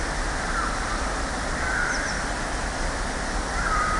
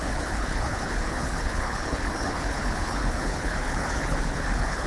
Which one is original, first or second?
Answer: first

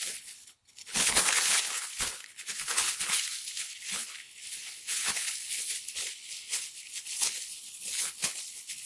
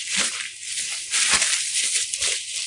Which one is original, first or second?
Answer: second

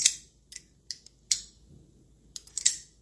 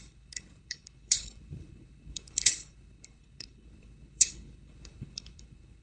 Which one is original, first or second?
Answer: first